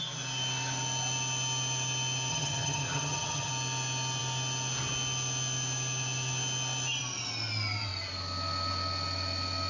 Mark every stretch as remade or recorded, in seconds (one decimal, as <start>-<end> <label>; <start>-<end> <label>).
0.0-2.3 recorded; 2.3-3.5 remade; 3.5-9.7 recorded